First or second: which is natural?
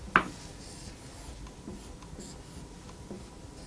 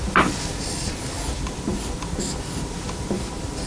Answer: first